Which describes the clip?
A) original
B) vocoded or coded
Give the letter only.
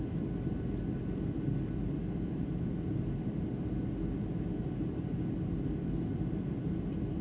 A